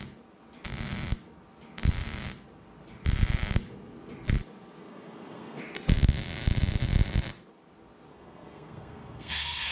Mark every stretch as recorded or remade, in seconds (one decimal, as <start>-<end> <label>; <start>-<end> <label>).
0.0-4.8 recorded; 4.8-5.6 remade; 5.6-8.1 recorded; 8.1-9.7 remade